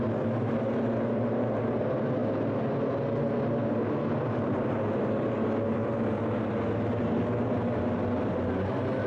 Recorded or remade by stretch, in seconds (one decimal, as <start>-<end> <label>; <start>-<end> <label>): 0.0-9.1 recorded